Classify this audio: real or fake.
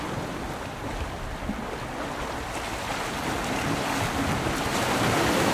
real